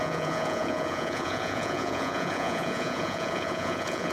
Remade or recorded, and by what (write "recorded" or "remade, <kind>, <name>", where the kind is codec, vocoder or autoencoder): remade, vocoder, Vocos